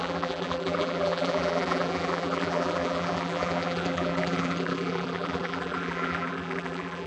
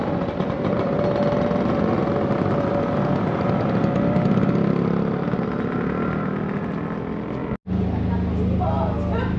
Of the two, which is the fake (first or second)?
first